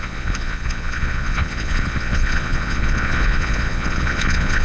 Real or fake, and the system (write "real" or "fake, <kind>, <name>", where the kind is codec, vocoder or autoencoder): fake, vocoder, Vocos